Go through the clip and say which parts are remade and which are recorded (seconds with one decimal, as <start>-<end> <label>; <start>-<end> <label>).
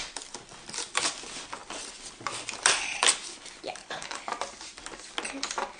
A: 0.0-3.8 recorded; 3.8-4.3 remade; 4.3-5.8 recorded